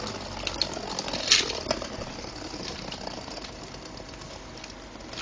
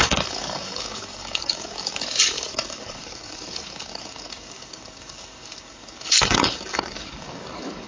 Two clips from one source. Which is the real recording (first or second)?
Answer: first